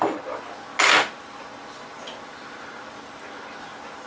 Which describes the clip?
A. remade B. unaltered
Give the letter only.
B